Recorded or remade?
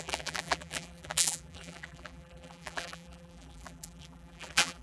remade